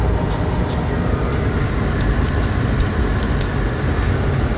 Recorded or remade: recorded